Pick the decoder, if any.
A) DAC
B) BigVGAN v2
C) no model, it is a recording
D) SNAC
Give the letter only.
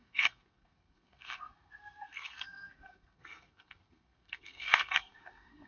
D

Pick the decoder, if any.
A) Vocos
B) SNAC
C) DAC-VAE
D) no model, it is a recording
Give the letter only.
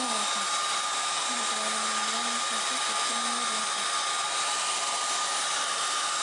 D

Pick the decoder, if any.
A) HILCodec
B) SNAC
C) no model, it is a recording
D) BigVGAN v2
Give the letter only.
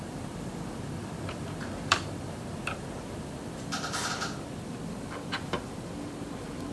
D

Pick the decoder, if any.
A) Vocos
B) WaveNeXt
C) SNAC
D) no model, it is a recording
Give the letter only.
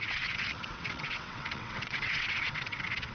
B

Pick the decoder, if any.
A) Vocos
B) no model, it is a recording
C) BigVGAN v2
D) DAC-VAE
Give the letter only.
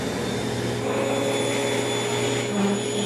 B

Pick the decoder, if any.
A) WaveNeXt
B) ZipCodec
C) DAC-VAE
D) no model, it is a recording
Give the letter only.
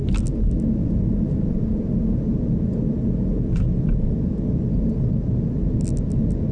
D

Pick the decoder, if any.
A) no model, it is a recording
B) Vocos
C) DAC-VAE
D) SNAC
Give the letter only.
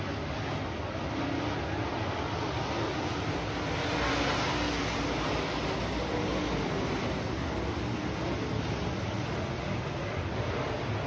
A